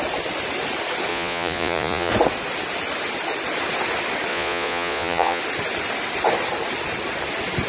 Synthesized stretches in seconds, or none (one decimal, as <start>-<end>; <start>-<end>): 1.1-2.1; 4.3-5.4